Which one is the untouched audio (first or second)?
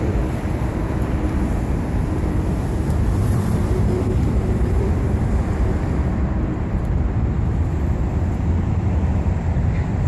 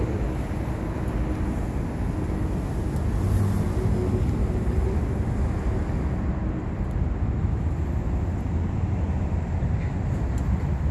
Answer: second